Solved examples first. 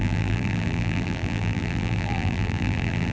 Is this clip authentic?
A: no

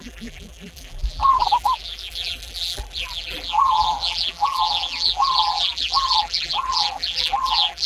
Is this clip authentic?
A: no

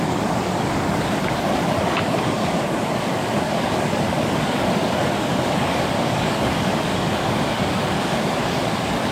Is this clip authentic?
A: no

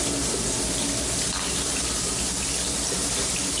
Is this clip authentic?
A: yes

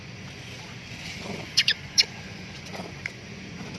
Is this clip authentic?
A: no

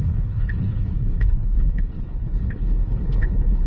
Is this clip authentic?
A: no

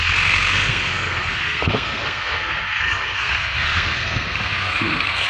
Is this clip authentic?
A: no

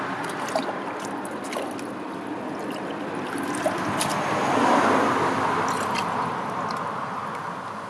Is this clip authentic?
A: yes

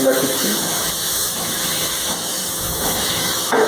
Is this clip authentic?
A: no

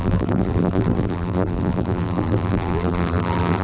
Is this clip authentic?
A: no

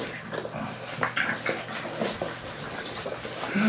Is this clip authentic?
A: yes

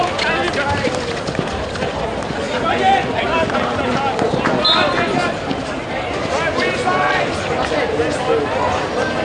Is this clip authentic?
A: yes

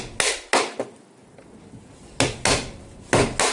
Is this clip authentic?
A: yes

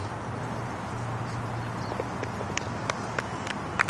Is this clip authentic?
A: yes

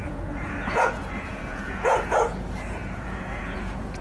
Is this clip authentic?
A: no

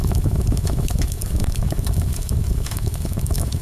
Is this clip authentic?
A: no